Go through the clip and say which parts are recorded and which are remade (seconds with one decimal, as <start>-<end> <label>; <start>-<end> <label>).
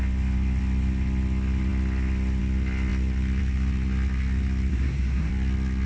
0.0-4.7 recorded; 4.7-5.3 remade; 5.3-5.9 recorded